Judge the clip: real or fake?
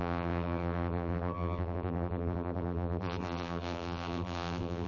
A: fake